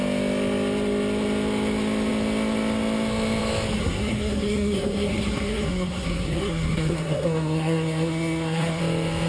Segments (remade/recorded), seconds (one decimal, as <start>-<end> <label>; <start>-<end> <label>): 0.0-3.8 recorded; 3.8-8.8 remade; 8.8-9.3 recorded